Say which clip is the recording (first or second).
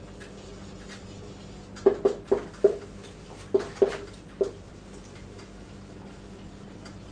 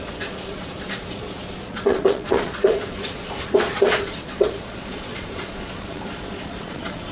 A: first